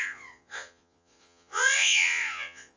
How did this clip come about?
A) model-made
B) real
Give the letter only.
A